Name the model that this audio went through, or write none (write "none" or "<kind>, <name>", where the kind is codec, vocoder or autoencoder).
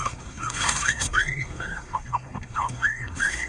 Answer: codec, SNAC